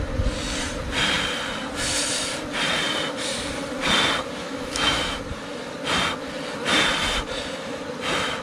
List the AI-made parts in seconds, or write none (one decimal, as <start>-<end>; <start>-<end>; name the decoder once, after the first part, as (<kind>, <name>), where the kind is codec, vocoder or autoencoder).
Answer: 4.4-5.2 (autoencoder, DAC-VAE)